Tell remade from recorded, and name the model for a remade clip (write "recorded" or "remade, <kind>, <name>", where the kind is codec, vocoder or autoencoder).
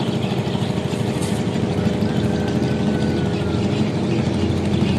recorded